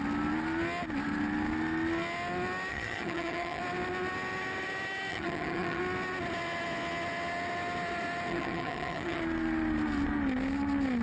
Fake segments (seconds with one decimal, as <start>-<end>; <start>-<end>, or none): 2.7-3.6; 5.1-5.8; 8.3-9.2